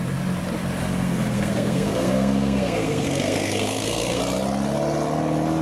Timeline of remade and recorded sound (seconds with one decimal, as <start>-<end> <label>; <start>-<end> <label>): 0.0-0.8 recorded; 0.8-4.2 remade; 4.2-5.6 recorded